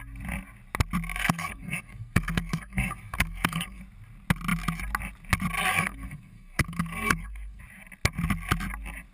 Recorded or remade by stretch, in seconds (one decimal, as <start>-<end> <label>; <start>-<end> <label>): 0.0-1.2 recorded; 1.2-3.8 remade; 3.8-5.7 recorded; 5.7-7.6 remade; 7.6-9.1 recorded